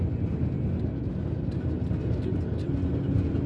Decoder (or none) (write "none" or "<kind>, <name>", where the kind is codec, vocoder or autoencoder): none